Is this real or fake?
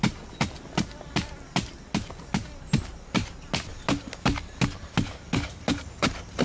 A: real